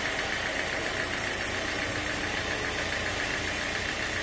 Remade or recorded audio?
recorded